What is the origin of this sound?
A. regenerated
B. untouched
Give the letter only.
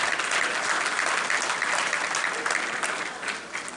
A